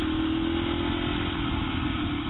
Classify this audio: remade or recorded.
recorded